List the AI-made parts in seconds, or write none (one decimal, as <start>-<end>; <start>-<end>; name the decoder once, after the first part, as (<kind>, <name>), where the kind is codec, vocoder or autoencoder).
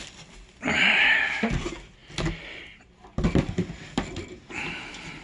none